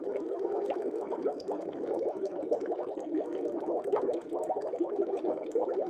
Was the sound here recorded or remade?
remade